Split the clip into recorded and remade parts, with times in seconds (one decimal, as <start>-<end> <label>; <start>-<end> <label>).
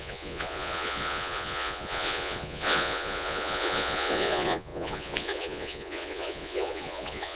0.0-7.4 remade